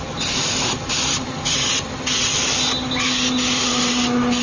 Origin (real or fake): real